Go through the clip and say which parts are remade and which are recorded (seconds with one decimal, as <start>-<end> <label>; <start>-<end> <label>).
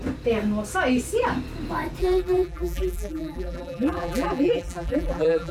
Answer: 0.0-2.0 recorded; 2.0-5.5 remade